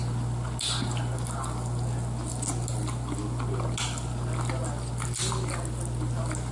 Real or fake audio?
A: real